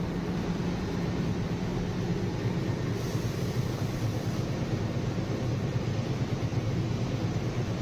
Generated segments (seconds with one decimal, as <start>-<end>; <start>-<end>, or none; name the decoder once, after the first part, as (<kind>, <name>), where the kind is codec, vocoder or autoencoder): none